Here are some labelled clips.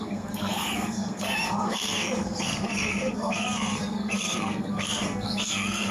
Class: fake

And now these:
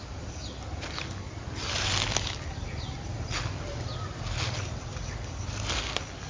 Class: real